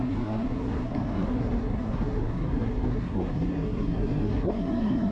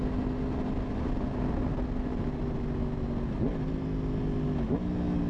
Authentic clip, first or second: second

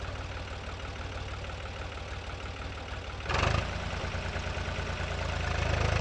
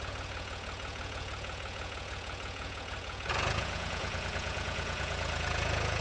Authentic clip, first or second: first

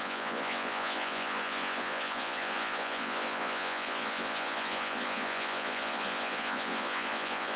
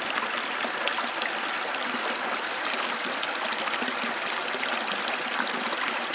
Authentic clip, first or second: second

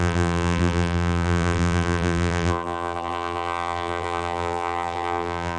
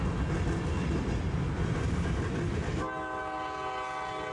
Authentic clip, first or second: second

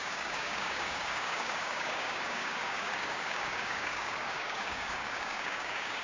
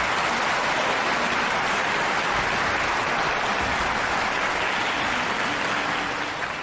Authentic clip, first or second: second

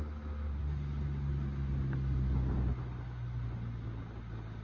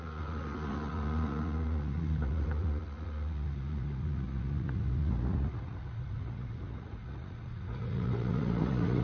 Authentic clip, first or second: first